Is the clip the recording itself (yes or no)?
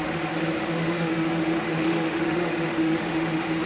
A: no